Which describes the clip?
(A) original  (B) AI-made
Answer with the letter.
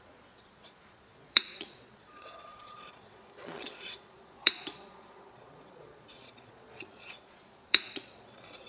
B